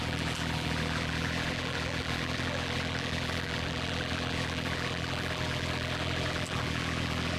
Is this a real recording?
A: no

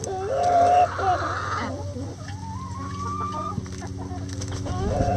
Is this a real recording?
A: yes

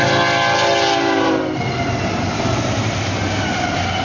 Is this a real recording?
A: yes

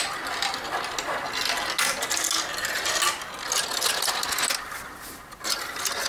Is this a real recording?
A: yes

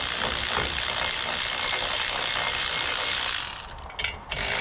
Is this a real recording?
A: yes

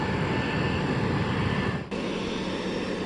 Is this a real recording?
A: yes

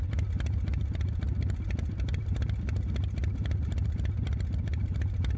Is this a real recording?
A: no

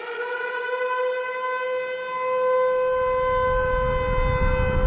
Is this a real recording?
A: yes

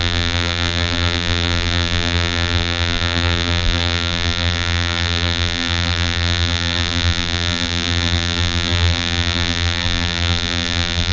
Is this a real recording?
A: no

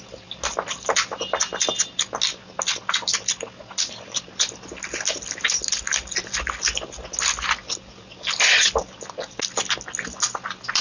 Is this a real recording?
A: yes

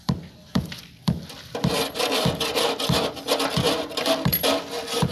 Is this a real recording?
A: no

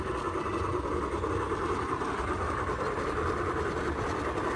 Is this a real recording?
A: yes